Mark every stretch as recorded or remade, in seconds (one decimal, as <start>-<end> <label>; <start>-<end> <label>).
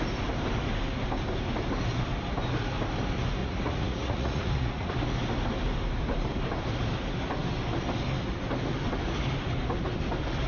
0.0-3.4 recorded; 3.4-4.9 remade; 4.9-10.5 recorded